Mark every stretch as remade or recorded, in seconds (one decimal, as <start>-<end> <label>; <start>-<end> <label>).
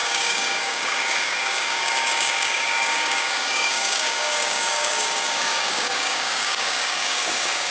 0.0-7.7 remade